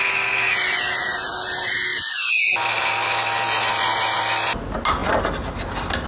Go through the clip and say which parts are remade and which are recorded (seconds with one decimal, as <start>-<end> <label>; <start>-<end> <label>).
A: 0.0-6.1 recorded